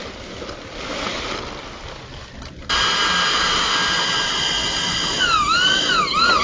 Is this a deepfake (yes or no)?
no